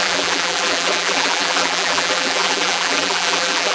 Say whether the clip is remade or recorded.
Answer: remade